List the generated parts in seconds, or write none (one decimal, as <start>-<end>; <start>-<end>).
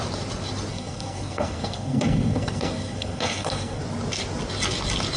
0.7-3.8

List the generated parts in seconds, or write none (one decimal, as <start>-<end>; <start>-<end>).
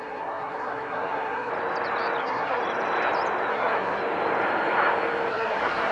0.0-1.5; 2.2-2.6; 3.5-4.0; 5.3-5.9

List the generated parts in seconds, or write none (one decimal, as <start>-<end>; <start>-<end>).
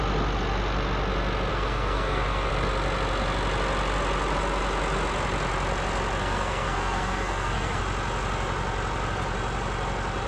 1.5-2.5; 6.2-7.8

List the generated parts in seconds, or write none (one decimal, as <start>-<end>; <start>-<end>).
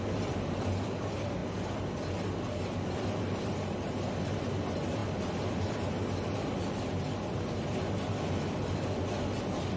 none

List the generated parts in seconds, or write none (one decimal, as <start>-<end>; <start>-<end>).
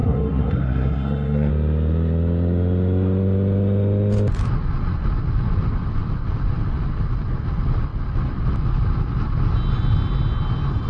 0.0-1.5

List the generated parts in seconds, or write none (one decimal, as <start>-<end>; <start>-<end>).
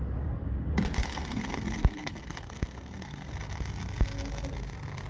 1.0-3.3